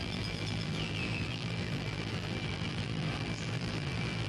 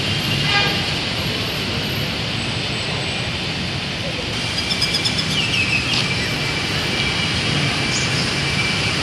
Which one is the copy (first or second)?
first